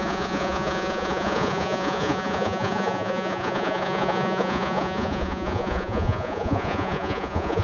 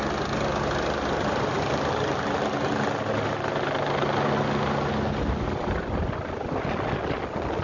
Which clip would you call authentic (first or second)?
second